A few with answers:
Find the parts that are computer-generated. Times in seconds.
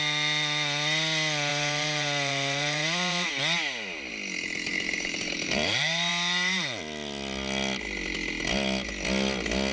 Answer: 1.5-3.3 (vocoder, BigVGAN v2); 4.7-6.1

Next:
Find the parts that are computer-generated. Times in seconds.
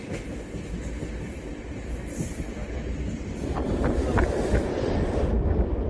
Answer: 1.5-4.0 (vocoder, BigVGAN v2)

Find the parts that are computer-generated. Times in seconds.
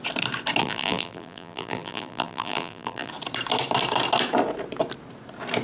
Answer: 0.6-3.1 (vocoder, BigVGAN v2)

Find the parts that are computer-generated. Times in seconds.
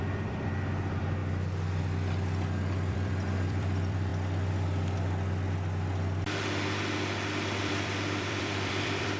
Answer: 0.0-1.2 (vocoder, BigVGAN v2); 2.9-4.1; 7.6-9.2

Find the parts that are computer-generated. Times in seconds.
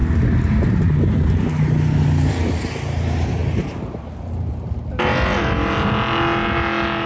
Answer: none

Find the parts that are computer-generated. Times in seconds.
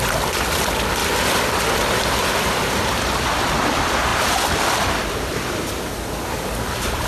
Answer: 0.0-7.1 (vocoder, BigVGAN v2)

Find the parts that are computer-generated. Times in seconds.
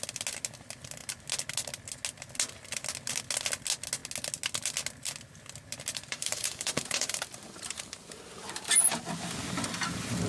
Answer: 5.9-9.0 (vocoder, BigVGAN v2)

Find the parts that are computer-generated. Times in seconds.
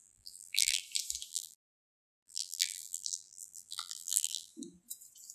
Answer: 0.0-0.8 (vocoder, BigVGAN v2); 1.3-4.5